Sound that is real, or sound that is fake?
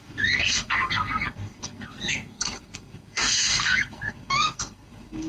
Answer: fake